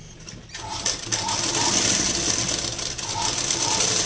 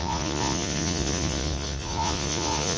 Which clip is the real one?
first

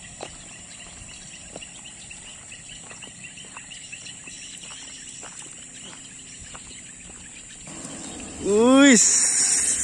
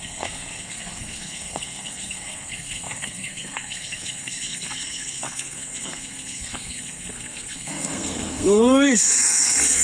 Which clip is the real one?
first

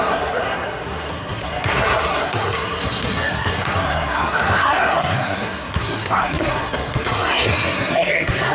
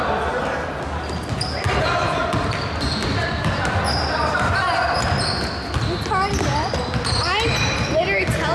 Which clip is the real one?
second